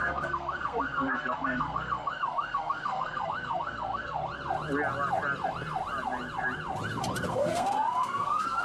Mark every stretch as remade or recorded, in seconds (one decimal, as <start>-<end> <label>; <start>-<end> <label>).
0.0-4.2 remade; 4.2-7.3 recorded; 7.3-8.6 remade